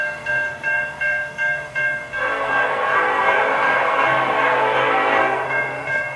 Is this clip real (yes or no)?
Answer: no